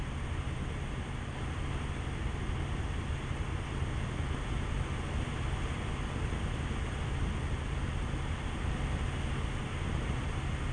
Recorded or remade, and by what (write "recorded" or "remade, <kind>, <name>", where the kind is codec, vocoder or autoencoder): recorded